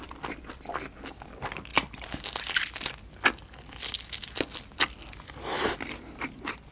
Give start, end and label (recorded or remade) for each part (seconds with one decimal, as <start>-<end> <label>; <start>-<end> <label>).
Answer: 0.0-6.7 recorded